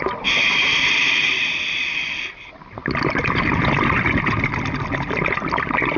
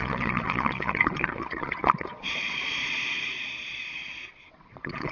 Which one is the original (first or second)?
first